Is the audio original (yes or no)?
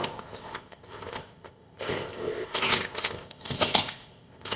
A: no